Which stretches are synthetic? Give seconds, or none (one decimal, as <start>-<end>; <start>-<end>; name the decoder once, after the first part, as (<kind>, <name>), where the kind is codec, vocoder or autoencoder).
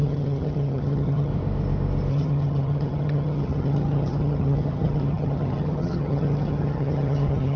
0.0-1.3 (vocoder, HiFi-GAN); 2.1-7.6